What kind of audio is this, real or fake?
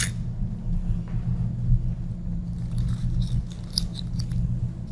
real